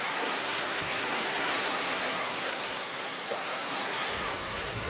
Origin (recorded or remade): remade